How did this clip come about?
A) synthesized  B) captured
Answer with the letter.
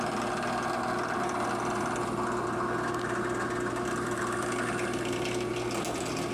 B